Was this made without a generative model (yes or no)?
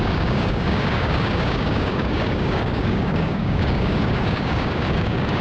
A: no